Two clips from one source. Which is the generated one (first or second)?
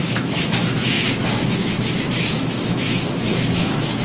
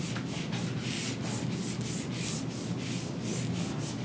first